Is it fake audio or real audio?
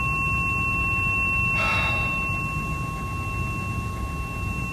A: real